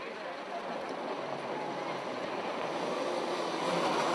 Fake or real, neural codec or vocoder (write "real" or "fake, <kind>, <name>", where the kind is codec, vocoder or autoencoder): real